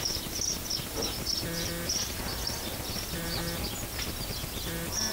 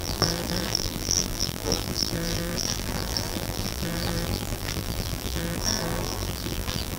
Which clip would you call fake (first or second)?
second